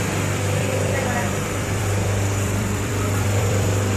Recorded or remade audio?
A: remade